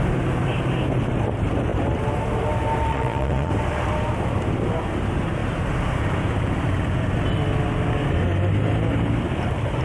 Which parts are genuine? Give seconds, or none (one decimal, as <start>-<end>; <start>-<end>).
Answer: 0.0-2.9; 3.5-9.8